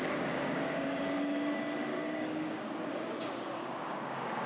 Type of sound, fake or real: fake